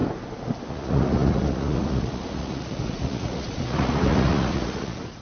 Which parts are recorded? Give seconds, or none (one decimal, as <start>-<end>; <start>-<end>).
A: 0.0-0.7